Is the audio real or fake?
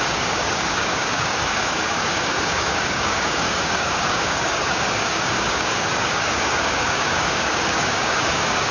fake